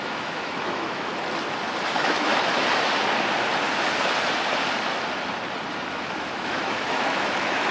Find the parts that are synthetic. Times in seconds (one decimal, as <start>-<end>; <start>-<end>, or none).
0.0-1.1; 1.8-2.3; 5.9-7.7